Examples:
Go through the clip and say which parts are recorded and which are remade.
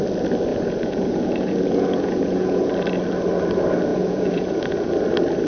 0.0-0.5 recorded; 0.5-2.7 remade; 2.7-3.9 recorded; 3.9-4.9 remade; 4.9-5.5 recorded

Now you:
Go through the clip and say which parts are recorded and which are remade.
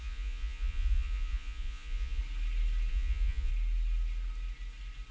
0.0-2.2 remade; 2.2-2.9 recorded; 2.9-3.5 remade; 3.5-5.1 recorded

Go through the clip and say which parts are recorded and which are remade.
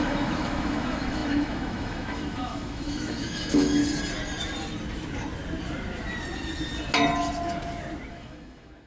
0.0-3.8 remade; 3.8-8.1 recorded; 8.1-8.9 remade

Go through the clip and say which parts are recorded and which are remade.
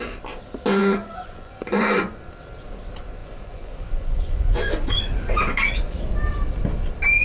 0.0-0.8 recorded; 0.8-2.2 remade; 2.2-3.2 recorded; 3.2-6.0 remade; 6.0-7.2 recorded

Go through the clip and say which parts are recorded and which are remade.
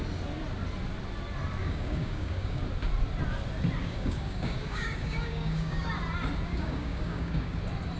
0.0-1.6 recorded; 1.6-2.6 remade; 2.6-3.8 recorded; 3.8-5.9 remade; 5.9-6.5 recorded; 6.5-7.6 remade; 7.6-8.0 recorded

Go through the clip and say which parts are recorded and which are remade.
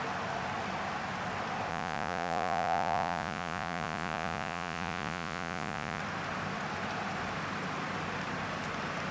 0.0-1.7 recorded; 1.7-6.0 remade; 6.0-9.1 recorded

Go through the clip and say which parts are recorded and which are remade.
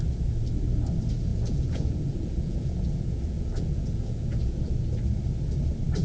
0.0-1.3 recorded; 1.3-4.9 remade; 4.9-6.0 recorded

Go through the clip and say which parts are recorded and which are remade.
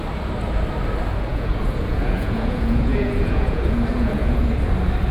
0.0-1.3 recorded; 1.3-4.4 remade; 4.4-5.1 recorded